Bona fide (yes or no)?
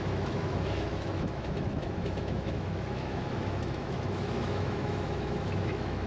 no